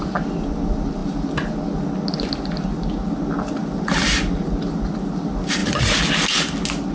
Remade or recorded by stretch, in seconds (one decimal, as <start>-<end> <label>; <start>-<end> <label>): 0.0-6.9 recorded